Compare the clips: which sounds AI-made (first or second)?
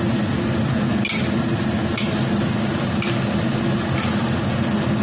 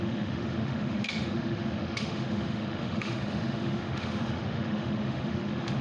second